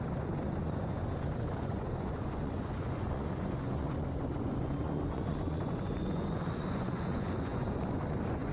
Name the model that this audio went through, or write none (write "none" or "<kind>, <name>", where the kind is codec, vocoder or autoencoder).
vocoder, Vocos